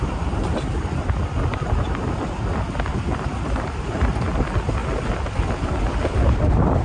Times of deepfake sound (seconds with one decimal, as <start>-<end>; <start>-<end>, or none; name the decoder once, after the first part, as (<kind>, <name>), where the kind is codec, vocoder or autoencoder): none